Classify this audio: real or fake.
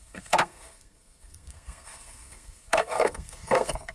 fake